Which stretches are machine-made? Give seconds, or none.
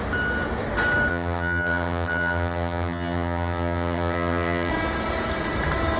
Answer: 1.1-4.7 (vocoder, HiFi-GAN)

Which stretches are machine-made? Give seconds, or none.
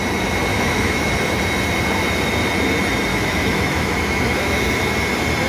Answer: 0.5-1.1 (autoencoder, DAC-VAE); 3.1-4.6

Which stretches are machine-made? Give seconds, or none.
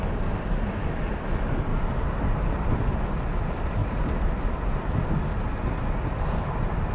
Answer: 1.7-2.7 (vocoder, BigVGAN v2); 3.8-4.8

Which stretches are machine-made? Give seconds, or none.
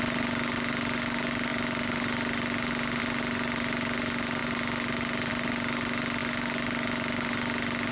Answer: none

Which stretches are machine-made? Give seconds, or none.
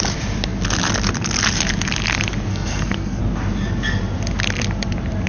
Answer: 2.5-3.2 (codec, SNAC)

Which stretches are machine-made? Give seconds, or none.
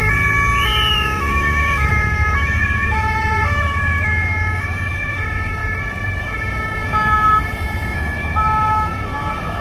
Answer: 0.9-5.6 (autoencoder, DAC-VAE); 6.2-9.6